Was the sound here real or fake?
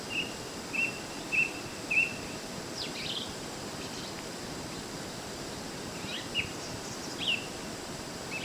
real